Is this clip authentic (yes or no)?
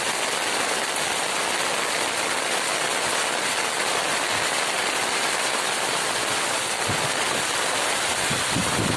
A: yes